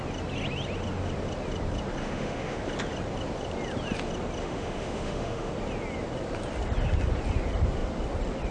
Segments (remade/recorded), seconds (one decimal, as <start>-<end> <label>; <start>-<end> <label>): 0.0-2.0 recorded; 2.0-2.6 remade; 2.6-4.4 recorded; 4.4-5.5 remade; 5.5-8.5 recorded